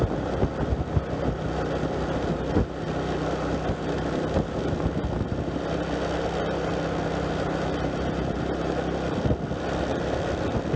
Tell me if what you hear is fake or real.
real